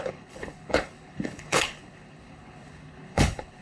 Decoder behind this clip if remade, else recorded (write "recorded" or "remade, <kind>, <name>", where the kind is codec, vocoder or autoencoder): remade, codec, HILCodec